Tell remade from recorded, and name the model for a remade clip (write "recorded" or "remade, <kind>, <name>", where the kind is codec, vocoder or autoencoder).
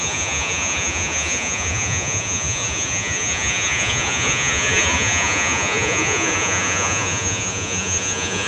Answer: remade, vocoder, Vocos